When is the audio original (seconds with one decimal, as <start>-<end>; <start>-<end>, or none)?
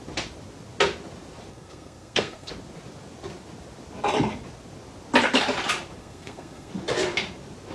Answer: 0.0-1.5; 2.5-6.0; 6.7-7.7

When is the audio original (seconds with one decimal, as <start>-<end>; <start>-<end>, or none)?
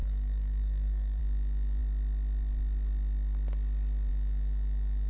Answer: 1.2-5.1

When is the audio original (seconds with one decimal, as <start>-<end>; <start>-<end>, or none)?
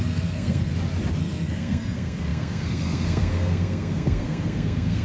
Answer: 0.7-1.2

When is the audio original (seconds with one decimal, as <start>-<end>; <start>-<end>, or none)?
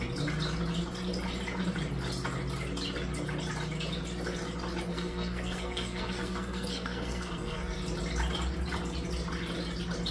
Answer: 0.0-4.9; 7.8-10.1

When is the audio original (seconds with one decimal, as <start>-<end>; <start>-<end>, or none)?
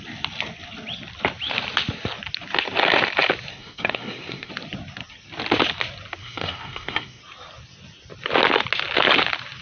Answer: 0.0-3.5; 4.5-6.2; 7.2-9.6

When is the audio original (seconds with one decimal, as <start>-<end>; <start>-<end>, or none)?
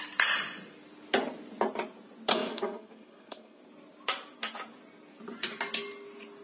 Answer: 0.0-2.3; 3.6-6.4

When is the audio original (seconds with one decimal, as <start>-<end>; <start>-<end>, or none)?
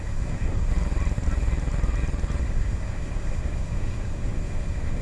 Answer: 0.7-2.4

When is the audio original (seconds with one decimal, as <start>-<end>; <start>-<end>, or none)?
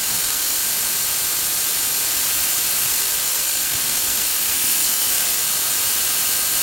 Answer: 0.6-2.8; 5.4-6.6